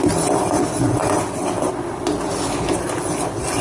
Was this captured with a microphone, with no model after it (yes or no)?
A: yes